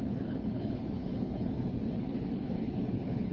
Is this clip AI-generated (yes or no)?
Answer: yes